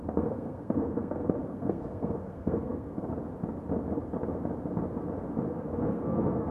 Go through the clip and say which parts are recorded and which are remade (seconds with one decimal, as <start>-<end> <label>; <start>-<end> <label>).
0.0-3.1 remade; 3.1-5.5 recorded; 5.5-6.5 remade